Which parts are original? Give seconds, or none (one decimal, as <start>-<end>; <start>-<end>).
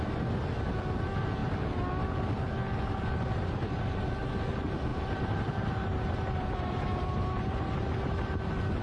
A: 0.0-4.9; 8.4-8.8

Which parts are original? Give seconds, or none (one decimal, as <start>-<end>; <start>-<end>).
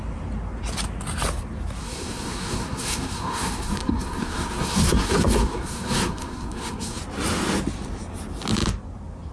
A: 0.0-1.8; 7.0-9.3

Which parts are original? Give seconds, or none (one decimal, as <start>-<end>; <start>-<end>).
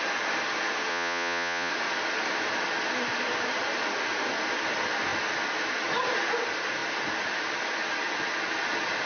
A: 0.0-0.9; 1.7-9.1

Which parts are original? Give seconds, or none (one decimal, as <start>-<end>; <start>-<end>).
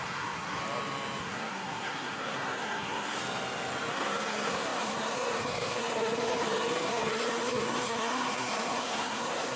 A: 0.6-1.2; 3.2-3.9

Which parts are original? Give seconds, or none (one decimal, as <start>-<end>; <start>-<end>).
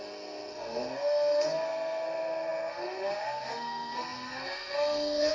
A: none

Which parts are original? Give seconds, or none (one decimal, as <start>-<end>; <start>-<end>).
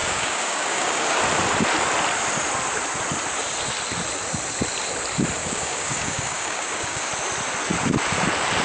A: 1.2-5.4; 7.1-8.6